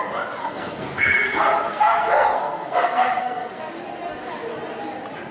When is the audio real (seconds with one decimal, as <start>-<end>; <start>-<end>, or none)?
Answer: 0.0-0.4; 3.6-5.3